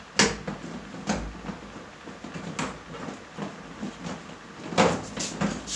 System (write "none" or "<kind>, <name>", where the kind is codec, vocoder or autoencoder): none